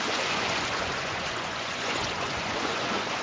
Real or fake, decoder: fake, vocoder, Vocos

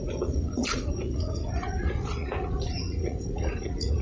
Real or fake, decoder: fake, vocoder, Vocos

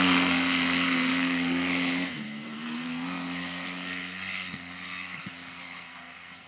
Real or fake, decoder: fake, codec, SNAC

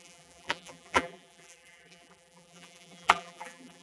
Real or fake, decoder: fake, vocoder, BigVGAN v2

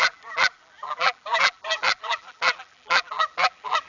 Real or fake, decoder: fake, vocoder, BigVGAN v2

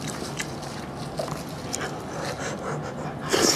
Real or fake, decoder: real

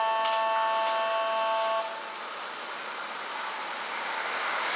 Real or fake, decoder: real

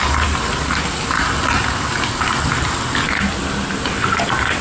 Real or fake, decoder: real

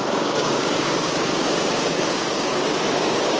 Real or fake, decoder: fake, codec, DAC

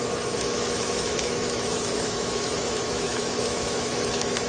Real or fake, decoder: fake, autoencoder, DAC-VAE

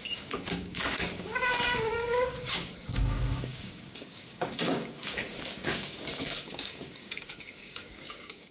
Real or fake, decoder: fake, codec, DAC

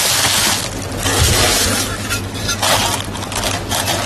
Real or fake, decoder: real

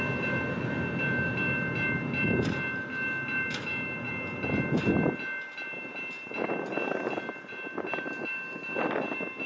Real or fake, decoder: real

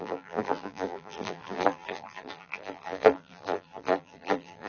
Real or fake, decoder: fake, vocoder, BigVGAN v2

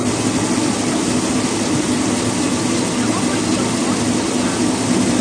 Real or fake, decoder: real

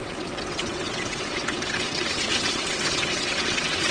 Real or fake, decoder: fake, vocoder, WaveNeXt